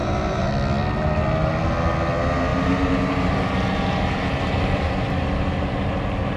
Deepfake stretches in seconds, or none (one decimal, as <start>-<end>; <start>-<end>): 0.0-0.5; 2.5-6.4